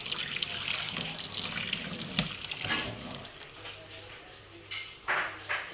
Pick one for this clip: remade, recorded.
recorded